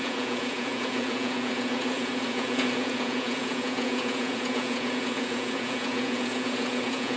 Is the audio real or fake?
fake